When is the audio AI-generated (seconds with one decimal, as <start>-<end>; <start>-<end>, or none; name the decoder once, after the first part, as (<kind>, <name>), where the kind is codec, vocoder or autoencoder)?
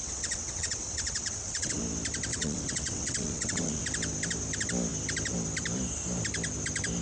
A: 0.0-1.8 (vocoder, WaveNeXt); 2.3-3.8